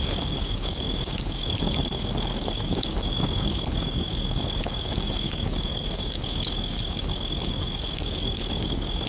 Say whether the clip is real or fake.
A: fake